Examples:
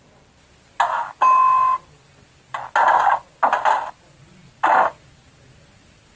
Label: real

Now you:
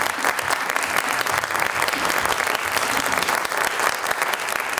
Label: real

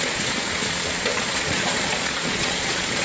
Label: fake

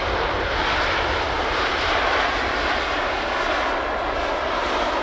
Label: real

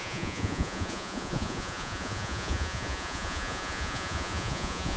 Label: fake